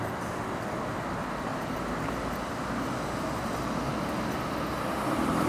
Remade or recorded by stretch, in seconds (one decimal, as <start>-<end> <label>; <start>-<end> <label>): 0.0-5.5 recorded